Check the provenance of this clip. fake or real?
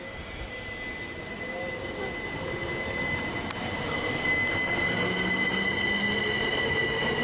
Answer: real